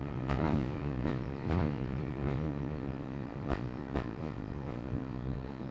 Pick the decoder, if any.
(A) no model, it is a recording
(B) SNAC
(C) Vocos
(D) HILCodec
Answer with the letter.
C